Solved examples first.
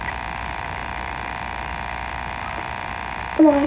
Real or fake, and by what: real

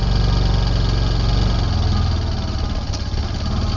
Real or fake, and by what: real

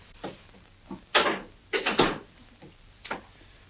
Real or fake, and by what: real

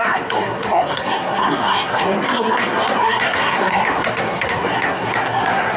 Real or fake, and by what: fake, codec, SNAC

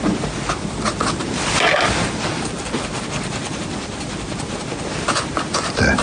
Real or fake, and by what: real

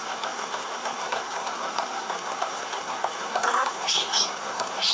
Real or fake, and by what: fake, codec, SNAC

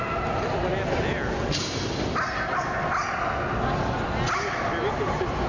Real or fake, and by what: real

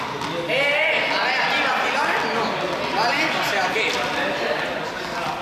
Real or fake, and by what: real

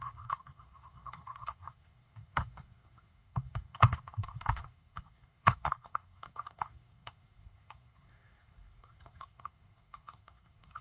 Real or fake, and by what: fake, codec, SNAC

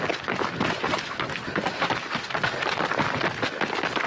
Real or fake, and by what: real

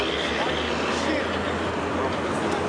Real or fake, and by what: real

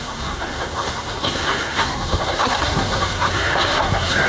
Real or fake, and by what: fake, codec, SNAC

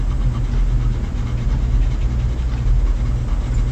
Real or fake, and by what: real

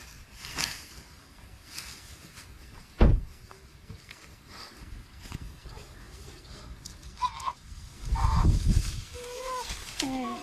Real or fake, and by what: fake, codec, SNAC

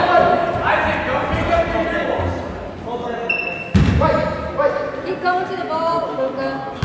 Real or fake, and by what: real